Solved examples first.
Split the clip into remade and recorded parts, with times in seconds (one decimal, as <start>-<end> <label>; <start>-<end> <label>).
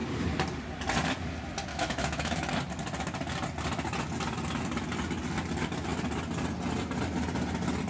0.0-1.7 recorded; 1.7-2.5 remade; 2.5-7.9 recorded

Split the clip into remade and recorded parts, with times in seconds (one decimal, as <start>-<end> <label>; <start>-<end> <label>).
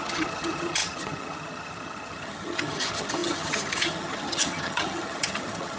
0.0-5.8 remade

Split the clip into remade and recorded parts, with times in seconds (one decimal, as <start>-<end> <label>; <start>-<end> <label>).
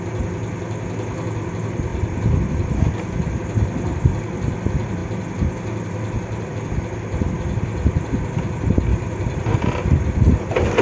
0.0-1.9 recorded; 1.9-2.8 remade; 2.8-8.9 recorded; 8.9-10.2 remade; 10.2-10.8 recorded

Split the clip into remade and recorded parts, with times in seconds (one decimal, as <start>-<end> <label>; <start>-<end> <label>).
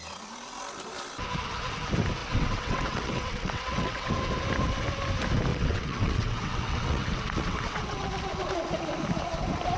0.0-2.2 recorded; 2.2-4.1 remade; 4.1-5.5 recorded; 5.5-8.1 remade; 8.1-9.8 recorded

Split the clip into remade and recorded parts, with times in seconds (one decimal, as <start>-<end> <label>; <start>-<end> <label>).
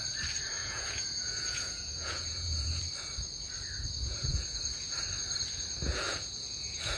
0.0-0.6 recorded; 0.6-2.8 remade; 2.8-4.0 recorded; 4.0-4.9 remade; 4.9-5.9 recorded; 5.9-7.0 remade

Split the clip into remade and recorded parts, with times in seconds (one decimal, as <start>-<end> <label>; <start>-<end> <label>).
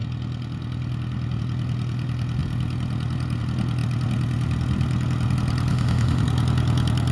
0.0-5.7 recorded; 5.7-6.2 remade; 6.2-7.1 recorded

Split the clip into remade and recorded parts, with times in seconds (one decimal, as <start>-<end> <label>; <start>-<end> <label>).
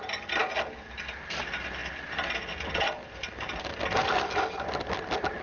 0.0-5.4 recorded